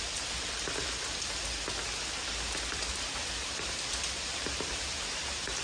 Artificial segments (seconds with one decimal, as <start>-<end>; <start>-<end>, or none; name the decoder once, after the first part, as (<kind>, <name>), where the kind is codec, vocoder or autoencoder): 2.9-5.6 (vocoder, BigVGAN v2)